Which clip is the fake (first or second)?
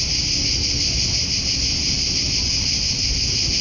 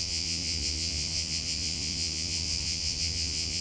second